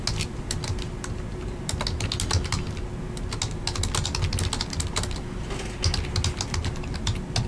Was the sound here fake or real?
real